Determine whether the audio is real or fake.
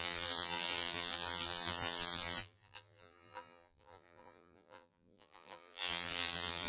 fake